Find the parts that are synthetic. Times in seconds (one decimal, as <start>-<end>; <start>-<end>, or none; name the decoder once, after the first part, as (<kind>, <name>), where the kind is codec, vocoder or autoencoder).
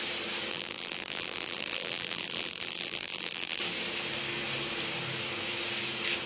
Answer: 0.5-3.6 (vocoder, BigVGAN v2)